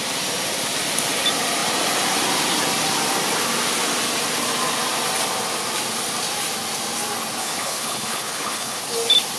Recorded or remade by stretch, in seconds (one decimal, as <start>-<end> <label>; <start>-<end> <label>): 0.0-7.4 recorded; 7.4-8.8 remade; 8.8-9.4 recorded